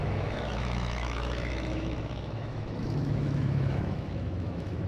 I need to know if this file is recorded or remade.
remade